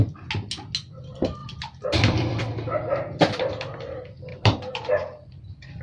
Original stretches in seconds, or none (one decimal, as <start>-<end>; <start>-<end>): 0.0-1.4; 2.4-4.3